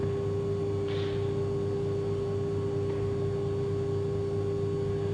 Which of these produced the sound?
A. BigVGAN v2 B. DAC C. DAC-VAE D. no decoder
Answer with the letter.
D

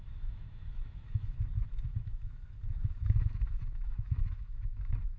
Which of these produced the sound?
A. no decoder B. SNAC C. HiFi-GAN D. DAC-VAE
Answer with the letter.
D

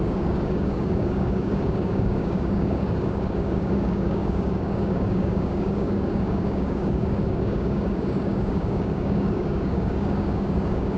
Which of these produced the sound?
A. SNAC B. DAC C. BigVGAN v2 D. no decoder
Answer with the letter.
B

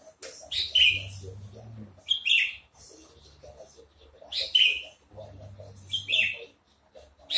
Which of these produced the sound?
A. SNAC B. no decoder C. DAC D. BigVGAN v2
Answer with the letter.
B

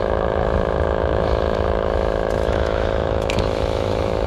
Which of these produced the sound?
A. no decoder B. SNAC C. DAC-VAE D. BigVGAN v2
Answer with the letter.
C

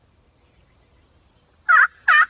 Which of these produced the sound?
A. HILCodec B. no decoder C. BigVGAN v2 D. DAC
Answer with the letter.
B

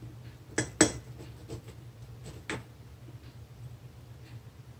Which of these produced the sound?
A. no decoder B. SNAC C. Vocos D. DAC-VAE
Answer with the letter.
A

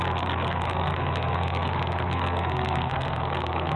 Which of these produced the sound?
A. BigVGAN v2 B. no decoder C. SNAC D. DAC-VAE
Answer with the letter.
C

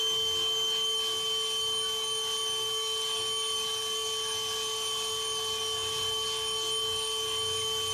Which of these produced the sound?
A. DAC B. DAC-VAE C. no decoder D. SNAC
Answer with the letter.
A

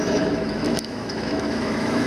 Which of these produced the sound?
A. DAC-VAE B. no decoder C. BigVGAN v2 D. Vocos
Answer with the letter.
A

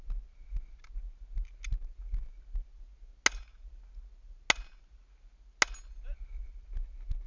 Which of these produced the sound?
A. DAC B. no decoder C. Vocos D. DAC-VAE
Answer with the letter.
B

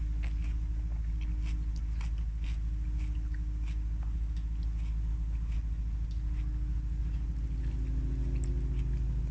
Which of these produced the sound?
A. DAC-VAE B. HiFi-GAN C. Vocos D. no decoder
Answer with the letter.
D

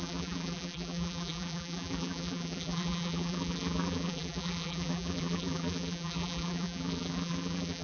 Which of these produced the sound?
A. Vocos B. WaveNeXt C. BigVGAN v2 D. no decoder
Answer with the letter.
C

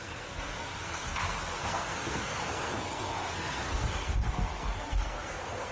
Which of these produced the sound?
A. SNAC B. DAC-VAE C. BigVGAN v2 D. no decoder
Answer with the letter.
A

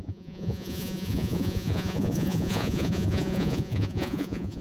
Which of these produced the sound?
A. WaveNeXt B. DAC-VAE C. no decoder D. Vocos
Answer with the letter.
D